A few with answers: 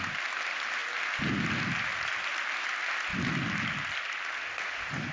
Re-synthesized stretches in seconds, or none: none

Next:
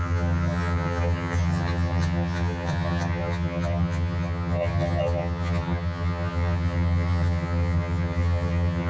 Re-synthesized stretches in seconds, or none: 0.0-8.9 (vocoder, HiFi-GAN)

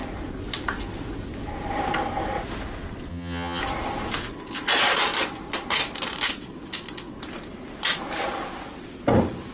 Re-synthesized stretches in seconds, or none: 3.1-3.6 (vocoder, HiFi-GAN)

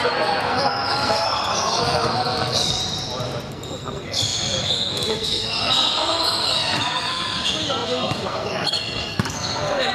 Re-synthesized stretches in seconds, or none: 0.0-2.8 (codec, SNAC); 3.5-9.9

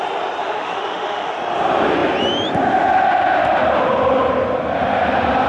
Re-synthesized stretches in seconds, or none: 0.4-1.3 (autoencoder, DAC-VAE)

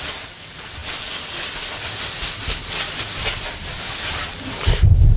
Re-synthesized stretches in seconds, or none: none

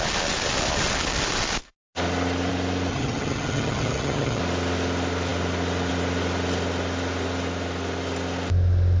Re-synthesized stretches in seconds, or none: 2.9-4.4 (vocoder, HiFi-GAN)